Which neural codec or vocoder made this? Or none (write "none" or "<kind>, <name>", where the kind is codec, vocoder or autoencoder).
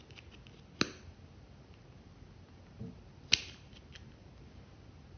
none